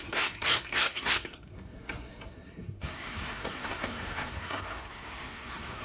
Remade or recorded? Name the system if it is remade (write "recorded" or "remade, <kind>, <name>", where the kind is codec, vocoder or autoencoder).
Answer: remade, codec, SNAC